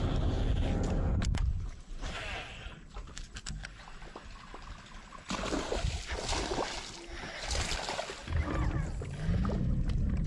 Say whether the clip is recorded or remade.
recorded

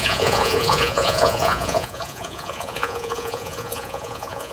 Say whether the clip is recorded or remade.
remade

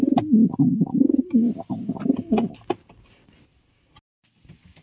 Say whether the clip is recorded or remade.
recorded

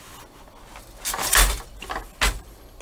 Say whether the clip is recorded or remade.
recorded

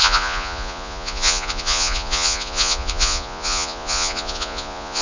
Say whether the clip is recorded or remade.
remade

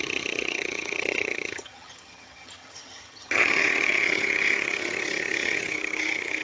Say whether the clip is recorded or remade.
remade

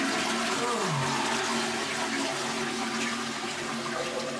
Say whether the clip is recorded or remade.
recorded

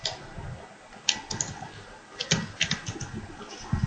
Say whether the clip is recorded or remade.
recorded